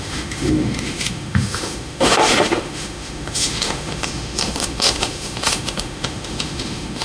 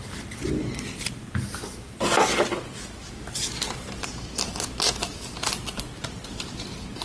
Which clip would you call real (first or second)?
second